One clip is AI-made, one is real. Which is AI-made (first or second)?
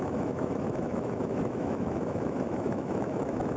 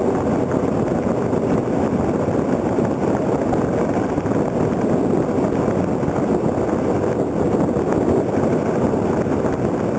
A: first